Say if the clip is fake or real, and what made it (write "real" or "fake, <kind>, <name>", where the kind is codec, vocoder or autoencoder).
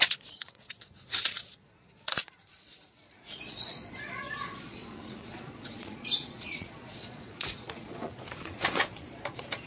fake, vocoder, Vocos